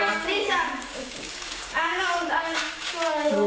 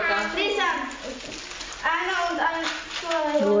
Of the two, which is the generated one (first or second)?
first